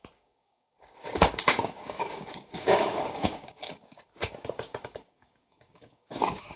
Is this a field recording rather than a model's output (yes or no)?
no